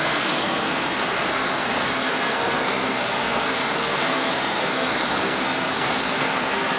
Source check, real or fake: fake